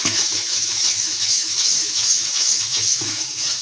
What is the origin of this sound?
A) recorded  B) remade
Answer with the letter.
B